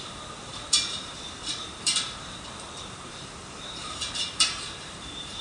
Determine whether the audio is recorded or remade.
remade